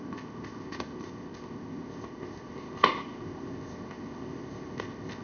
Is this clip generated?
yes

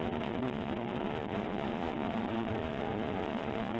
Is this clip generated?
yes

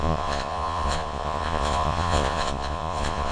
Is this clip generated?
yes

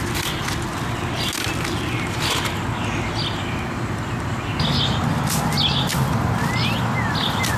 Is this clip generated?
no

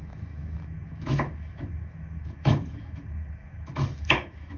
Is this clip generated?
yes